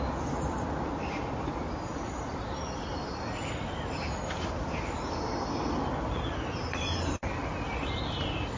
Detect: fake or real fake